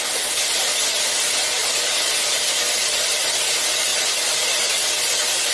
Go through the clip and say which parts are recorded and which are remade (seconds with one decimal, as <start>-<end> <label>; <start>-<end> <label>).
0.0-5.5 recorded